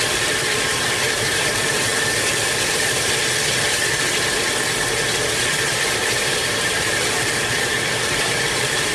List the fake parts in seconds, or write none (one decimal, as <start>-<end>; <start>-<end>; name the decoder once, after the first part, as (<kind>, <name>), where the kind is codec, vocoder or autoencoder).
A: 0.0-3.2 (vocoder, BigVGAN v2); 5.7-8.9